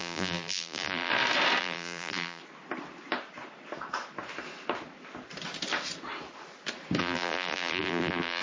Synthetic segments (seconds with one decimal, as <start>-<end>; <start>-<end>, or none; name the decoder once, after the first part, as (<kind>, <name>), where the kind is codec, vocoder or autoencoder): 0.0-1.1 (vocoder, BigVGAN v2); 1.6-2.4; 7.0-8.4